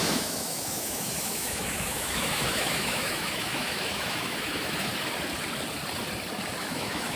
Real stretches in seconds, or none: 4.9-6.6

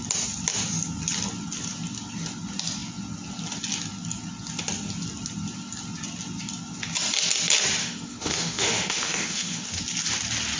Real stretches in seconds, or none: 0.0-7.8; 9.8-10.6

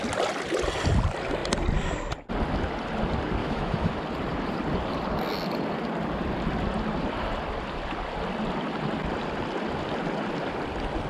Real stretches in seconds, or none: 0.0-3.4; 3.9-11.1

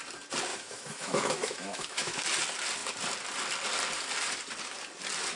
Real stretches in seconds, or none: 0.0-0.5; 2.2-5.4

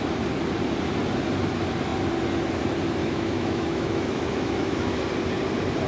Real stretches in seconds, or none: 0.0-3.0; 5.0-5.9

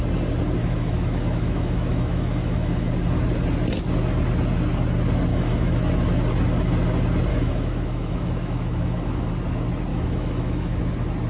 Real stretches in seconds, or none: 0.0-0.6; 2.9-5.3; 5.8-7.3; 9.3-9.9; 10.8-11.3